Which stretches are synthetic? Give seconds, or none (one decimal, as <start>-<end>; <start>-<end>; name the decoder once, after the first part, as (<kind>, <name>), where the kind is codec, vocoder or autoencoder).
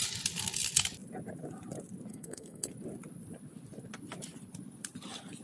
2.1-2.7 (codec, SNAC)